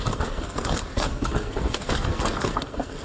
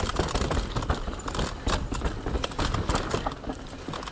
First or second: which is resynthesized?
first